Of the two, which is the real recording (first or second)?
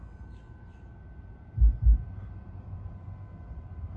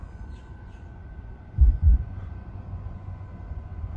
first